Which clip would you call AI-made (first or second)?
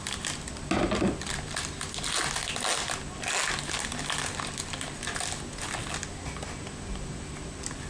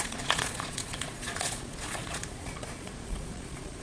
second